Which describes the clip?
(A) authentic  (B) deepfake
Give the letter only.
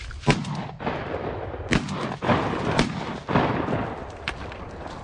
A